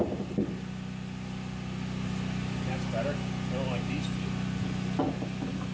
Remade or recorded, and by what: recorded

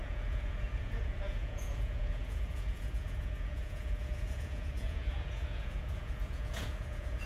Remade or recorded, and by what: remade, vocoder, Vocos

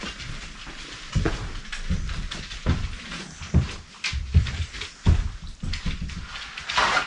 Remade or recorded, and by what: recorded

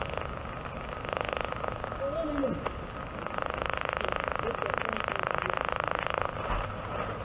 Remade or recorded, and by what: recorded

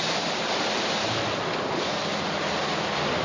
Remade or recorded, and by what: recorded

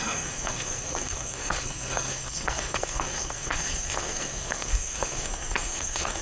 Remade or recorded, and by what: remade, codec, SNAC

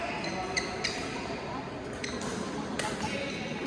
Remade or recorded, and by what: recorded